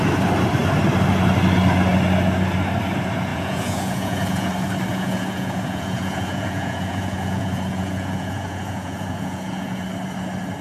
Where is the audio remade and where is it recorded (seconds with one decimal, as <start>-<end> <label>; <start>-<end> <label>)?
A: 0.0-3.3 recorded; 3.3-4.5 remade; 4.5-4.9 recorded; 4.9-9.8 remade; 9.8-10.6 recorded